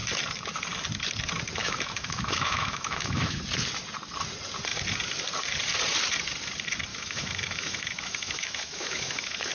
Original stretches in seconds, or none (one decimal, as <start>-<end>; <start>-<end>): 0.0-1.6; 3.4-6.9